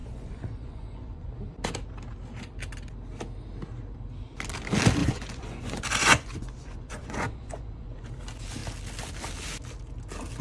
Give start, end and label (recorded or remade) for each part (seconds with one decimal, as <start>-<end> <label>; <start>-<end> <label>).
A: 0.0-1.3 remade; 1.3-5.0 recorded; 5.0-8.1 remade; 8.1-10.4 recorded